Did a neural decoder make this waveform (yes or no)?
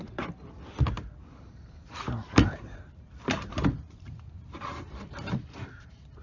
yes